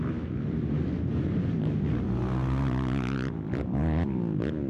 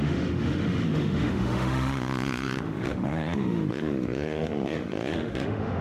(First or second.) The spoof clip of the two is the second